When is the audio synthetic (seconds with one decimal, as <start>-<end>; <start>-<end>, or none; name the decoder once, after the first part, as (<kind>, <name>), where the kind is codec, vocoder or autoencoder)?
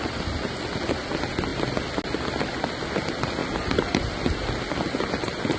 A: none